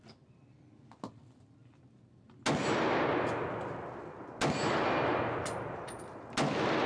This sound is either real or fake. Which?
real